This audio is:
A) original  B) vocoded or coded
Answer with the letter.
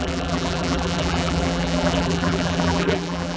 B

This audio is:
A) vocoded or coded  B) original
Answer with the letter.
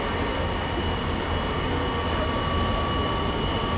B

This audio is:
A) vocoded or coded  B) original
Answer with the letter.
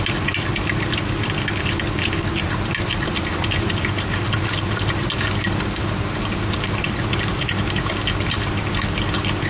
B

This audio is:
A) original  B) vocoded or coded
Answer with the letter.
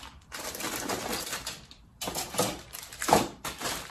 B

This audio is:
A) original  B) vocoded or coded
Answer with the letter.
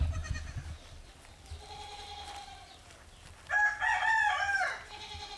A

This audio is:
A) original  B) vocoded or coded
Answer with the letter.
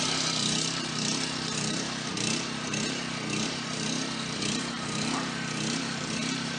B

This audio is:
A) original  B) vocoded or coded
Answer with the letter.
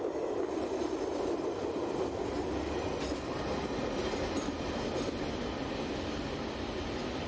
A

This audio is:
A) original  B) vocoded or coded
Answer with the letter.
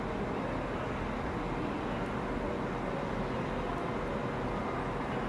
A